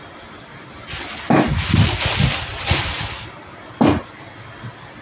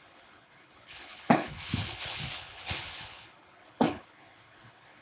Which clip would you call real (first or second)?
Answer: first